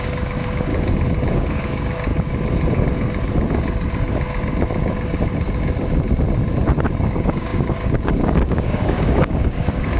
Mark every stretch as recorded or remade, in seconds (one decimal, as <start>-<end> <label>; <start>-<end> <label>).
0.0-0.7 remade; 0.7-1.3 recorded; 1.3-2.1 remade; 2.1-7.0 recorded; 7.0-10.0 remade